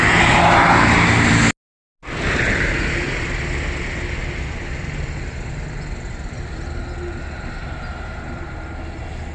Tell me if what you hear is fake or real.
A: real